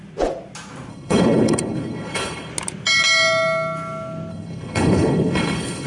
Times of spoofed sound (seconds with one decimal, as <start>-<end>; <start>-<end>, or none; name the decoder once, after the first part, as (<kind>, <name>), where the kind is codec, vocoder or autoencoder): 0.9-2.5 (codec, HILCodec); 4.3-5.9